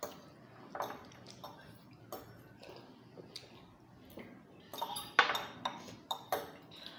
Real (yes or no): yes